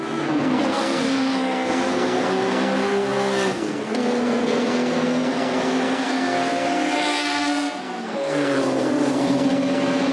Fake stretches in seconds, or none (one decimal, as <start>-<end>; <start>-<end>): 0.0-10.1